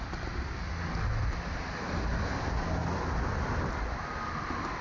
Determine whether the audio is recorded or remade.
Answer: recorded